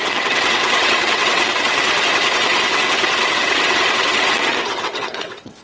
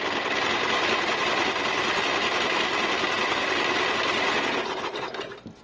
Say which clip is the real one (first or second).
second